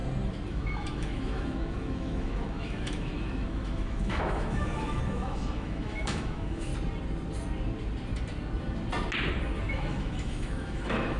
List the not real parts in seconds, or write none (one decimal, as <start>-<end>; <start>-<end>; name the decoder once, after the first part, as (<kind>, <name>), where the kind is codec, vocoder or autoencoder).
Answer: 0.5-6.7 (autoencoder, DAC-VAE); 9.7-11.2